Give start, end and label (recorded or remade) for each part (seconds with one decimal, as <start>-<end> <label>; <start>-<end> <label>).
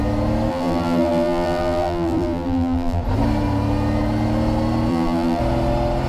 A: 0.0-0.5 recorded; 0.5-3.0 remade; 3.0-4.9 recorded; 4.9-5.4 remade; 5.4-6.1 recorded